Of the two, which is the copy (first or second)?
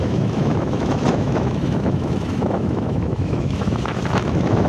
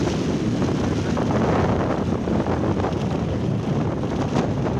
first